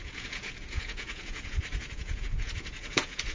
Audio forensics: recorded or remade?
remade